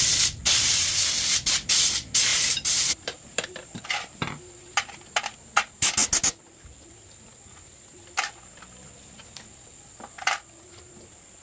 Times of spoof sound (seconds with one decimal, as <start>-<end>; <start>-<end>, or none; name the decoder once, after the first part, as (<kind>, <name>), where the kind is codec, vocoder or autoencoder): 2.3-3.8 (vocoder, BigVGAN v2)